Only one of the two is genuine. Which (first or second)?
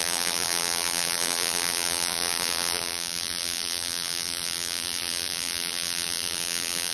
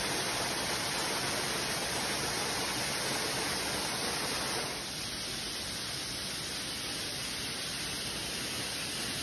second